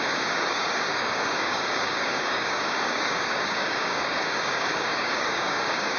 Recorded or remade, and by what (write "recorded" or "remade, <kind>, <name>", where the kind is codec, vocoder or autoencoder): remade, codec, DAC